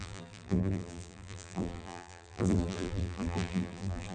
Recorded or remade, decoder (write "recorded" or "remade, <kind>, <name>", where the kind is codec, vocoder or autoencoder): remade, vocoder, BigVGAN v2